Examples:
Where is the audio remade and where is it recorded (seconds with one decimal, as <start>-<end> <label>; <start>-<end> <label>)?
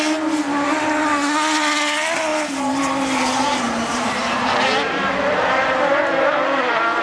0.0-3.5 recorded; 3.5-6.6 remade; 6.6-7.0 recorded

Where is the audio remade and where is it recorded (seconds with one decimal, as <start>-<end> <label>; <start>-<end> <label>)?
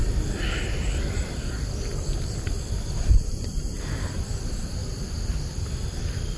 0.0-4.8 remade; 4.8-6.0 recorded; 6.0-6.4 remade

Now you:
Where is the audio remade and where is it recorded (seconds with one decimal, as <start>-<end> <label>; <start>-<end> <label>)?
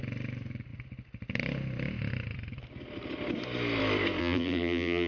0.0-4.2 recorded; 4.2-5.1 remade